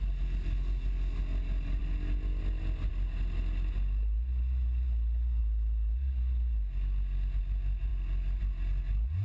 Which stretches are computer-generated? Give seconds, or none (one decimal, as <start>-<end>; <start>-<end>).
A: none